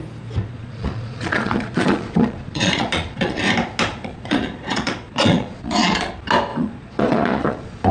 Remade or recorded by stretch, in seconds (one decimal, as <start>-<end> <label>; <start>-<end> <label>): 0.0-0.5 recorded; 0.5-3.4 remade; 3.4-3.9 recorded; 3.9-6.1 remade; 6.1-6.5 recorded; 6.5-7.9 remade